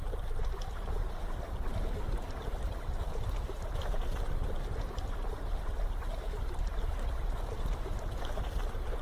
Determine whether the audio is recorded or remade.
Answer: recorded